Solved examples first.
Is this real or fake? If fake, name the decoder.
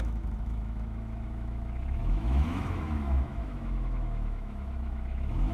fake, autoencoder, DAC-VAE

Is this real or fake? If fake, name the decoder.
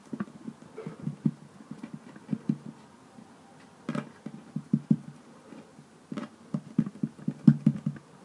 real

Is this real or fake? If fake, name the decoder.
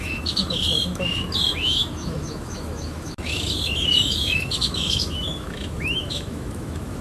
fake, autoencoder, DAC-VAE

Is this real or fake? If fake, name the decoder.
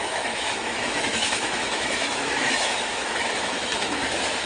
fake, autoencoder, DAC-VAE